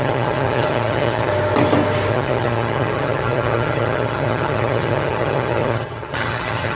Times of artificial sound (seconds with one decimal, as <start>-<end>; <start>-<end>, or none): 0.0-1.3; 2.1-6.7